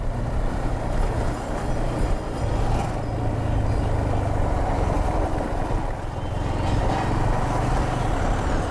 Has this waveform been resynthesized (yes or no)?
no